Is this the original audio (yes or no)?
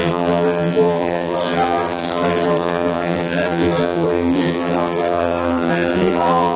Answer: no